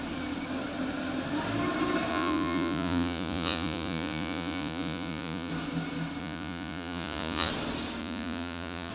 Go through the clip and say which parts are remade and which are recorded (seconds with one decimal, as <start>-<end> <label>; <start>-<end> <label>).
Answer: 0.0-2.1 recorded; 2.1-5.5 remade; 5.5-6.2 recorded; 6.2-7.5 remade; 7.5-8.0 recorded; 8.0-8.9 remade